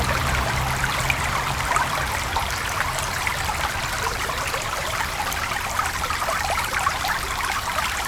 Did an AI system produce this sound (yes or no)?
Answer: yes